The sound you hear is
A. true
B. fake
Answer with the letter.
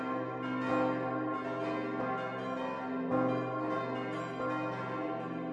A